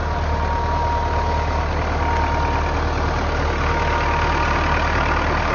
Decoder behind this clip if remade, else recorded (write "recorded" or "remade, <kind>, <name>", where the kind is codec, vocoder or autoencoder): recorded